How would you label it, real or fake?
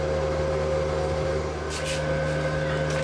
real